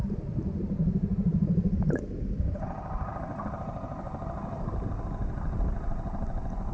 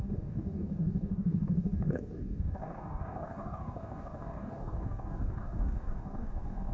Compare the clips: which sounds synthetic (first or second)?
second